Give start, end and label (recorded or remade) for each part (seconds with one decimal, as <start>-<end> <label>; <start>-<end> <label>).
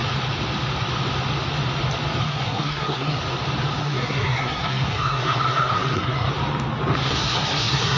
0.0-2.2 recorded; 2.2-3.2 remade; 3.2-3.8 recorded; 3.8-6.3 remade; 6.3-7.0 recorded; 7.0-8.0 remade